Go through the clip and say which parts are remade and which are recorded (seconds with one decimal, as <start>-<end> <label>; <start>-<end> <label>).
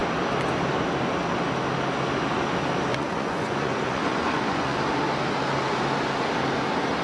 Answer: 0.0-2.9 recorded; 2.9-4.8 remade; 4.8-7.0 recorded